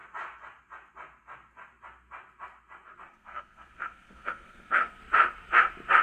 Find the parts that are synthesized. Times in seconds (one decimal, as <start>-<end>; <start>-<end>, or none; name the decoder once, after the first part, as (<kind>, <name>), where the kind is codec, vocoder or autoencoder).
3.1-5.0 (codec, SNAC)